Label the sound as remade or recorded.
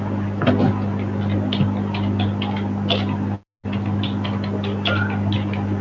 recorded